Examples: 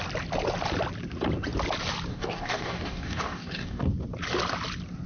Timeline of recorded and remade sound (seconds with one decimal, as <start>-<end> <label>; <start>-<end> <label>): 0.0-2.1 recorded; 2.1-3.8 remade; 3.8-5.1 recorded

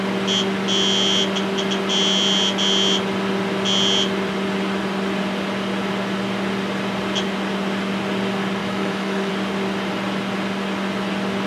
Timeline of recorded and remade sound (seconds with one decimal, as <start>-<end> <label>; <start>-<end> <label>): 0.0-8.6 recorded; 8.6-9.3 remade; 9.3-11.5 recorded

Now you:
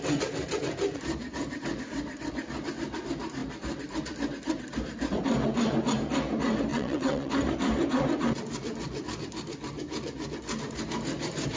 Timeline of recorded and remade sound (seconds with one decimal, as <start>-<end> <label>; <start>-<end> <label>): 0.0-6.7 recorded; 6.7-7.3 remade; 7.3-11.6 recorded

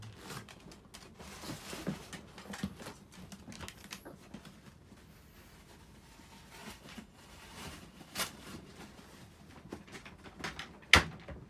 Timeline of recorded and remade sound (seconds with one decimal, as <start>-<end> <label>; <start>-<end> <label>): 0.0-6.6 recorded; 6.6-8.7 remade; 8.7-11.5 recorded